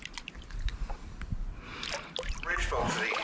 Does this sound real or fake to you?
real